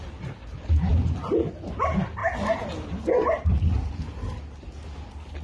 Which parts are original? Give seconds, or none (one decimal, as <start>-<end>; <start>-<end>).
0.0-5.4